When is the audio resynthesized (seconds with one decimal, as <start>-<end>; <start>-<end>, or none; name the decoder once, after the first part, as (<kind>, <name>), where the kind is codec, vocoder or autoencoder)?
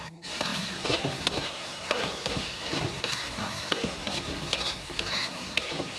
0.0-6.0 (codec, SNAC)